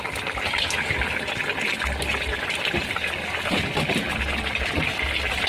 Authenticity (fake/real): real